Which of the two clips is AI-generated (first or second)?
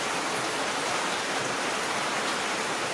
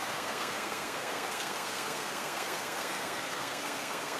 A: second